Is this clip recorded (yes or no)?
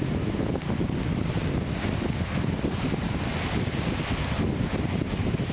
yes